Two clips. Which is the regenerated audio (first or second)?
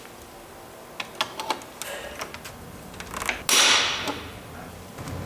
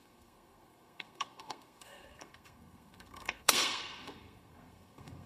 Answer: second